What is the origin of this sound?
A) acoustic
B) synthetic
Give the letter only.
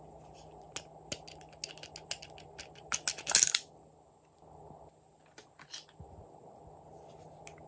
A